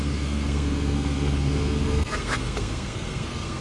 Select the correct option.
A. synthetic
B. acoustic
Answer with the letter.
A